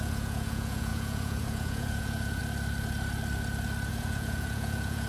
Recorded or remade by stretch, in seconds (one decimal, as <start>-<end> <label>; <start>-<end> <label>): 0.0-2.4 remade; 2.4-3.9 recorded; 3.9-5.1 remade